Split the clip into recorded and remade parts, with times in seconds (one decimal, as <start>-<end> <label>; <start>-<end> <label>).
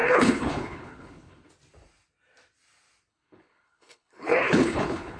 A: 0.0-1.5 remade; 1.5-3.1 recorded; 3.1-5.2 remade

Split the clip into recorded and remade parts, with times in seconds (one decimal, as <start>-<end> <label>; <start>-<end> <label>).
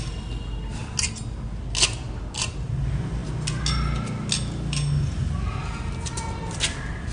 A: 0.0-7.1 recorded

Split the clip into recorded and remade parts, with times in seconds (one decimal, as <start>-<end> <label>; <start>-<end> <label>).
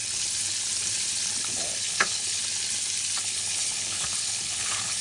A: 0.0-1.4 recorded; 1.4-2.4 remade; 2.4-3.2 recorded; 3.2-5.0 remade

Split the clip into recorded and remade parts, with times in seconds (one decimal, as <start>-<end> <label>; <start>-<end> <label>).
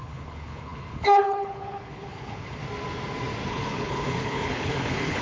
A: 0.0-2.6 remade; 2.6-3.5 recorded; 3.5-5.2 remade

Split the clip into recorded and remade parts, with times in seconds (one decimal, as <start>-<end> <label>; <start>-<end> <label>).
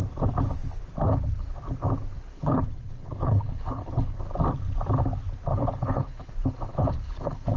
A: 0.0-2.3 recorded; 2.3-4.2 remade; 4.2-5.5 recorded; 5.5-6.3 remade; 6.3-6.7 recorded; 6.7-7.6 remade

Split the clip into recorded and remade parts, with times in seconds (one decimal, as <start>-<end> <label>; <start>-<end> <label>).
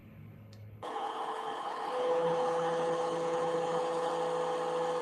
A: 0.0-4.1 remade; 4.1-5.0 recorded